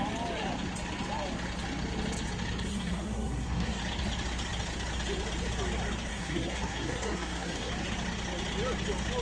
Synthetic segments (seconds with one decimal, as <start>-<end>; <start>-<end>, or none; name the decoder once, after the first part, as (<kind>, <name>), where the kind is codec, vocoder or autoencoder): 2.7-3.8 (codec, SNAC); 6.1-7.7